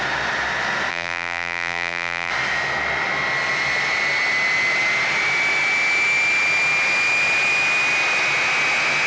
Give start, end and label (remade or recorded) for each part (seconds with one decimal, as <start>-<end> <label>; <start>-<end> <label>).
0.0-0.9 recorded; 0.9-2.3 remade; 2.3-9.1 recorded